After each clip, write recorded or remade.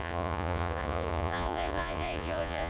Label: remade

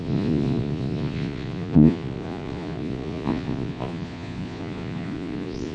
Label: remade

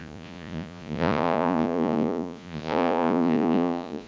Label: remade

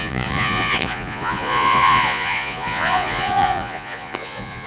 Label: remade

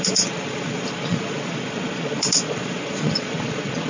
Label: remade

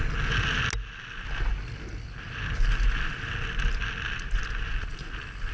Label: recorded